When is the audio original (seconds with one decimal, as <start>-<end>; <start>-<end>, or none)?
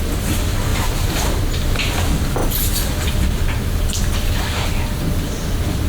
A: 0.0-0.7; 1.3-5.9